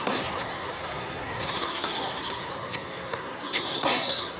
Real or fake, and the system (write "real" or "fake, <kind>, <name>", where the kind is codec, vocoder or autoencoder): fake, codec, SNAC